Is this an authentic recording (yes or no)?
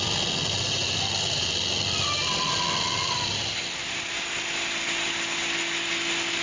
yes